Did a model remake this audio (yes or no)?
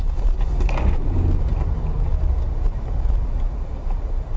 no